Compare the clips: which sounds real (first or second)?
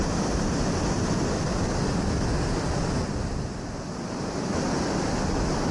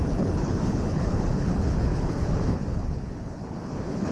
first